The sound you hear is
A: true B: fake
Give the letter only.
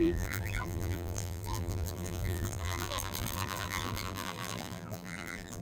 B